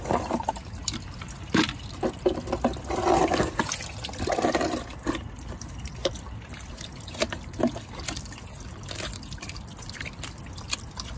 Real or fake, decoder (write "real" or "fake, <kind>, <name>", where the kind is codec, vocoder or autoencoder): real